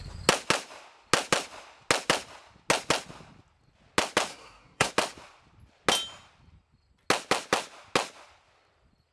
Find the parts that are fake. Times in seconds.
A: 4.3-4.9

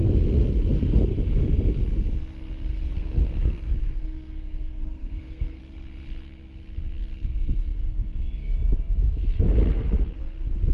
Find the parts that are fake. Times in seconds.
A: 2.7-5.6

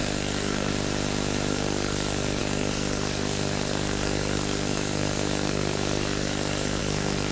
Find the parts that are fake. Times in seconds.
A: 0.0-0.7; 1.5-7.3

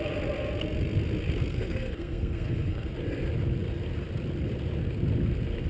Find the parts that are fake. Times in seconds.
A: 1.5-2.9

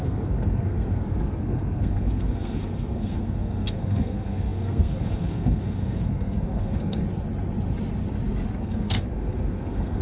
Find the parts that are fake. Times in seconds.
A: 0.0-7.0; 8.6-10.0

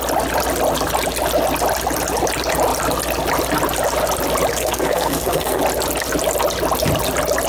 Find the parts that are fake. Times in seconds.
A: 4.5-5.6

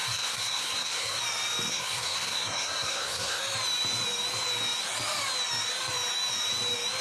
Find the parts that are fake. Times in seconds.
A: 0.0-1.2; 1.7-3.4

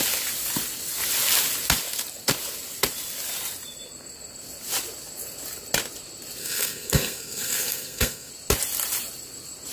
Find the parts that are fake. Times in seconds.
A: 6.4-8.3